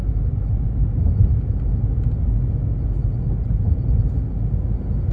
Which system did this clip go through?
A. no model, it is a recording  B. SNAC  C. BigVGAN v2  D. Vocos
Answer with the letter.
A